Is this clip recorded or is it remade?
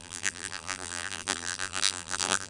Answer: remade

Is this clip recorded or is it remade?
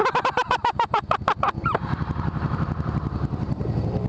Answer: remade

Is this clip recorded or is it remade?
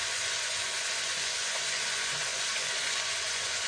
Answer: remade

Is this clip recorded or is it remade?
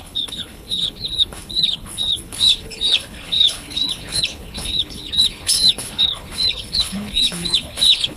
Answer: remade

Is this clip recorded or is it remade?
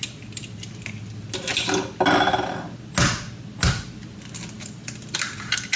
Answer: recorded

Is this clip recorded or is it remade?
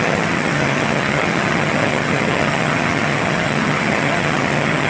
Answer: remade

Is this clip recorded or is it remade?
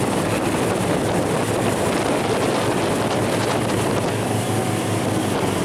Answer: recorded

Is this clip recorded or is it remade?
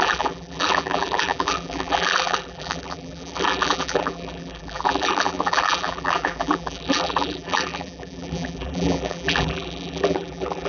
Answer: remade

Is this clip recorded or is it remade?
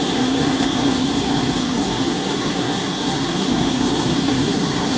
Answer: remade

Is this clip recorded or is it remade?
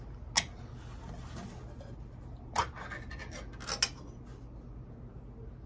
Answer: recorded